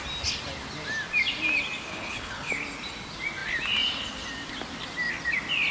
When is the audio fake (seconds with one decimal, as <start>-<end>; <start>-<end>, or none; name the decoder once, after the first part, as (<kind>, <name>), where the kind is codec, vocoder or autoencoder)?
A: 1.9-2.5 (codec, HILCodec)